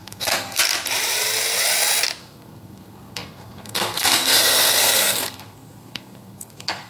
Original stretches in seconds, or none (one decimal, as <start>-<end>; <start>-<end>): 0.6-2.2